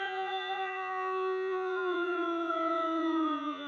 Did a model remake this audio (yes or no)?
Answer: yes